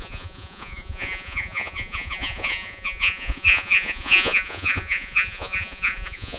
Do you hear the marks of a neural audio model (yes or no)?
yes